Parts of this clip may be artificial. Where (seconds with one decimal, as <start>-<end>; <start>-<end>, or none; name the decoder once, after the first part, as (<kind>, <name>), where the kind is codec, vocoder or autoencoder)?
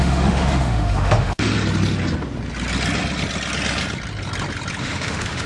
0.0-1.5 (autoencoder, DAC-VAE); 4.8-5.5